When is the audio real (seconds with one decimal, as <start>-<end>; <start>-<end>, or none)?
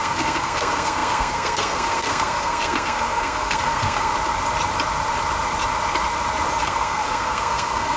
4.1-6.6